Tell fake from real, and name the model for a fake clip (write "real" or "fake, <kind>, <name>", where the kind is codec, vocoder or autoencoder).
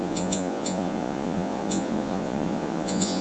fake, vocoder, Vocos